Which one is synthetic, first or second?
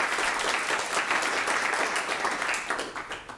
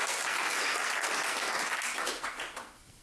second